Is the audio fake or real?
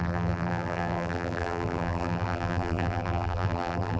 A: fake